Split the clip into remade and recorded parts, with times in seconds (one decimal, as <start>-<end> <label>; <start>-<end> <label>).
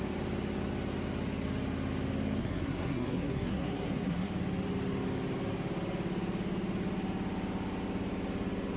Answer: 0.0-2.4 recorded; 2.4-4.3 remade; 4.3-8.8 recorded